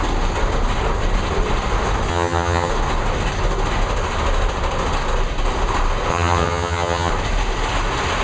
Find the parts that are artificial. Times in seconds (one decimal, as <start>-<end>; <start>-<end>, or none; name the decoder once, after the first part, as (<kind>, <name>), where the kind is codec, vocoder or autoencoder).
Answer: 2.1-2.7 (vocoder, HiFi-GAN); 6.1-7.1